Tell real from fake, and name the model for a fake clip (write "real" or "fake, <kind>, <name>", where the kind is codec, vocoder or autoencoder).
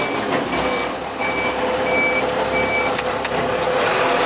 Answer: real